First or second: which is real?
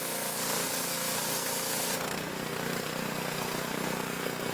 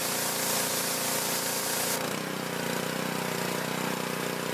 second